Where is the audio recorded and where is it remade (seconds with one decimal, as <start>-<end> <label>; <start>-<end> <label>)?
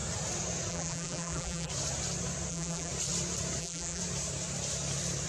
0.0-0.7 recorded; 0.7-1.7 remade; 1.7-2.5 recorded; 2.5-2.9 remade; 2.9-3.6 recorded; 3.6-4.0 remade; 4.0-5.3 recorded